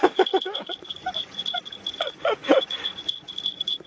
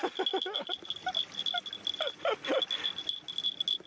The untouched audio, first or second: second